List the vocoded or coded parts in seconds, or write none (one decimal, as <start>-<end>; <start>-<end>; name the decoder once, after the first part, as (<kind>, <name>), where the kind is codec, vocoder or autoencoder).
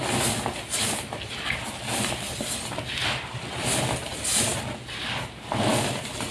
none